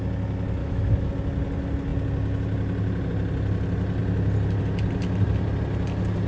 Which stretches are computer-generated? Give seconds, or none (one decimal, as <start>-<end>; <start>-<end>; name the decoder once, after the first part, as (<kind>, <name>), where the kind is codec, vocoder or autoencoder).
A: 0.6-1.1 (autoencoder, DAC-VAE)

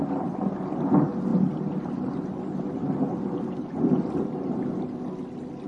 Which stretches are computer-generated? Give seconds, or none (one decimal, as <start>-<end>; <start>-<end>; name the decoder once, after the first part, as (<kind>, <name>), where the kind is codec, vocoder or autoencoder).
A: none

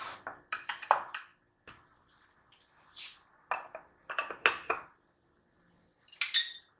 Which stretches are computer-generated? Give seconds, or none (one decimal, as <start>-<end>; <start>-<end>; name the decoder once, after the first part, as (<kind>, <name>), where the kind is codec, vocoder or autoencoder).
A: none

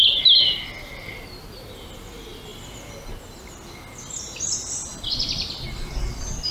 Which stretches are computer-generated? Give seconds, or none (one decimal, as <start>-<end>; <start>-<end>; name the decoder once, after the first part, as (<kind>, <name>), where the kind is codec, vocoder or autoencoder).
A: none

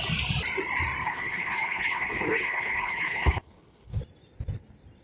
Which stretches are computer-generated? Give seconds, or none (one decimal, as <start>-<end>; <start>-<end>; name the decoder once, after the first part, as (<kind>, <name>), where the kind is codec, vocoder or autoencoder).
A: 1.0-4.0 (codec, HILCodec)

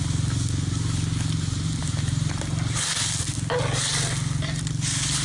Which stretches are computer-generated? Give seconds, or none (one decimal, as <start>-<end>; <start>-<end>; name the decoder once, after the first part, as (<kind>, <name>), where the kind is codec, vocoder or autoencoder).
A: none

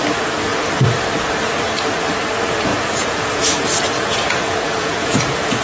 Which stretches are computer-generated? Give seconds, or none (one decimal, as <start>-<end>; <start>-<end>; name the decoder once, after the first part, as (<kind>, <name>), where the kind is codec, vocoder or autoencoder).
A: 2.7-5.6 (vocoder, Vocos)